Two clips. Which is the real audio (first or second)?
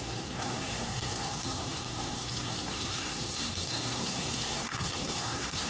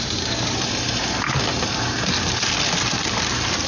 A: second